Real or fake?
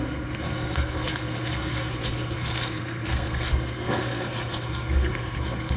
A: fake